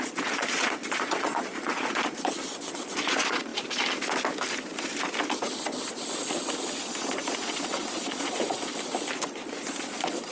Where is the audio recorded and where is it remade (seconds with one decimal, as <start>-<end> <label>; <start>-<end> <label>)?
0.0-3.5 remade; 3.5-6.8 recorded; 6.8-8.7 remade; 8.7-9.2 recorded; 9.2-10.3 remade